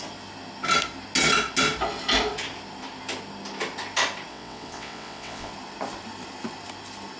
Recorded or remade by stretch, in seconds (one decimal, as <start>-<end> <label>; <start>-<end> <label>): 0.0-4.3 recorded; 4.3-5.5 remade; 5.5-7.2 recorded